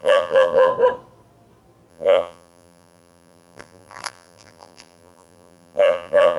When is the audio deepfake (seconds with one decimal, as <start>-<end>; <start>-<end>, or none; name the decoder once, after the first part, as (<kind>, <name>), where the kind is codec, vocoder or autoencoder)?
0.0-0.7 (vocoder, BigVGAN v2); 1.9-6.4

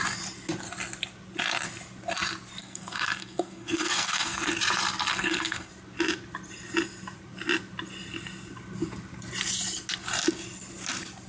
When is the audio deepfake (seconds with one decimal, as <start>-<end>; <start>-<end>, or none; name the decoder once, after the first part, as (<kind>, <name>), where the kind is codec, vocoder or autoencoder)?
2.6-4.5 (codec, SNAC); 5.1-5.7

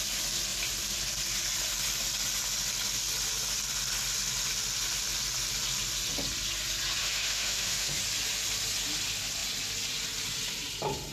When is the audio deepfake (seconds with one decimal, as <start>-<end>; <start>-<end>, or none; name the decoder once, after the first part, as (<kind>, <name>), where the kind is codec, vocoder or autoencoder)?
7.0-8.0 (autoencoder, DAC-VAE)

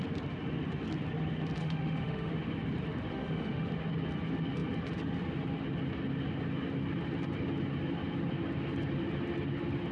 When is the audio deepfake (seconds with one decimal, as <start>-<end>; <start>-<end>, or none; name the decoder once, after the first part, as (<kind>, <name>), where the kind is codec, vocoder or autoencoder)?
1.6-2.3 (autoencoder, DAC-VAE); 3.1-3.7